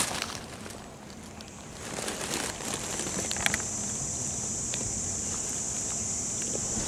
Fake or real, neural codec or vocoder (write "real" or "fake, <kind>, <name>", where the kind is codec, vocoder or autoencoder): fake, vocoder, BigVGAN v2